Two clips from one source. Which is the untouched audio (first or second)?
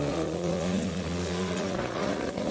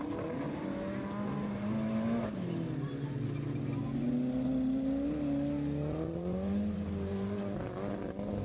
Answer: second